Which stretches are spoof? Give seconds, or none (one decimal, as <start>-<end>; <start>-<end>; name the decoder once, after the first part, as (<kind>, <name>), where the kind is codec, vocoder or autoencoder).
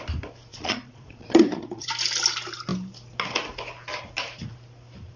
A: 0.5-1.9 (vocoder, Vocos)